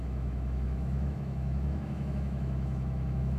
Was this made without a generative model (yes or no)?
no